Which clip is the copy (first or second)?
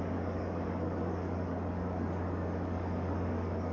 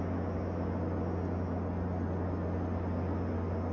first